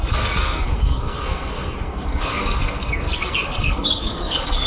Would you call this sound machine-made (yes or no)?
yes